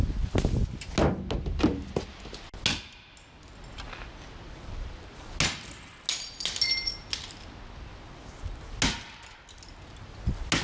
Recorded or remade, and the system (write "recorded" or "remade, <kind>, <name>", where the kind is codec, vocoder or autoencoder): recorded